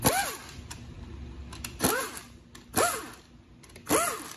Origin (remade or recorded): recorded